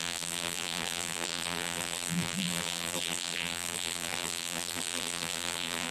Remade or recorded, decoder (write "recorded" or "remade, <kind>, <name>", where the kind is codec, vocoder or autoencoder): remade, vocoder, BigVGAN v2